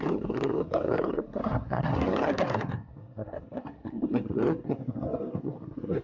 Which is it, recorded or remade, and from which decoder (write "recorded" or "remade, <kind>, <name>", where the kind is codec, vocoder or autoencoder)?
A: remade, codec, SNAC